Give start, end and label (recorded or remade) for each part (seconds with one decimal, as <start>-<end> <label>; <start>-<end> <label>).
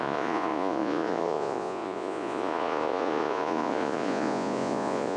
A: 0.0-5.2 remade